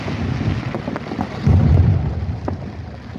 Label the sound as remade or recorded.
recorded